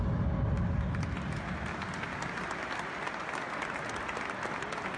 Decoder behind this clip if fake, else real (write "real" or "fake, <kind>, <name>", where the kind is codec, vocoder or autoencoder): real